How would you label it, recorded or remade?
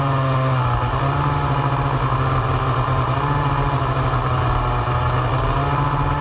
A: recorded